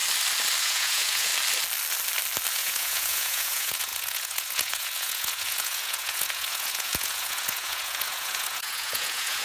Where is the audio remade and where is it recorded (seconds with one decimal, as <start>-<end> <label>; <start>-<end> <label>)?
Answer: 0.0-0.6 recorded; 0.6-1.3 remade; 1.3-2.5 recorded; 2.5-9.4 remade

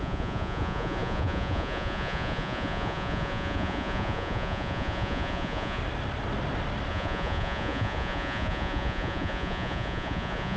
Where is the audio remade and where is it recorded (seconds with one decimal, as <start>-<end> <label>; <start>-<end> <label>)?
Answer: 0.0-5.8 remade; 5.8-6.9 recorded; 6.9-10.6 remade

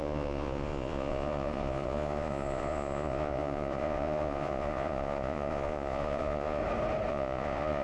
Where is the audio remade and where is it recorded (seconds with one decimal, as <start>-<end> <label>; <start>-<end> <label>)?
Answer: 0.0-6.6 remade; 6.6-7.1 recorded; 7.1-7.8 remade

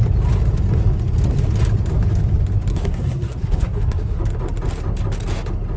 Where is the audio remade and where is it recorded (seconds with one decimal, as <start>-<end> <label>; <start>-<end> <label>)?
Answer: 0.0-2.7 recorded; 2.7-4.2 remade; 4.2-5.8 recorded